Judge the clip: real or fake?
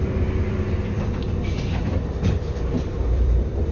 fake